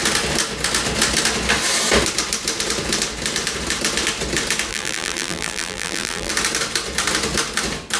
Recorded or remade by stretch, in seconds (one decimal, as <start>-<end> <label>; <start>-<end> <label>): 0.0-4.7 recorded; 4.7-6.3 remade; 6.3-8.0 recorded

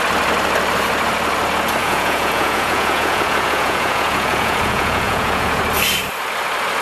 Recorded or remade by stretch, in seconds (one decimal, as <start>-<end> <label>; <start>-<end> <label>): 0.0-1.8 recorded; 1.8-5.6 remade; 5.6-6.8 recorded

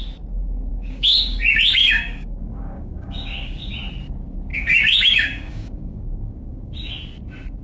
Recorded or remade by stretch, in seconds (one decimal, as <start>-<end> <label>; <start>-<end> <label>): 0.0-0.7 recorded; 0.7-3.7 remade; 3.7-4.5 recorded; 4.5-6.9 remade; 6.9-7.6 recorded

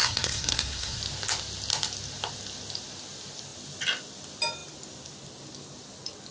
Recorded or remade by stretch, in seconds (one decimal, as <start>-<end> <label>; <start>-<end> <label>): 0.0-1.0 remade; 1.0-6.3 recorded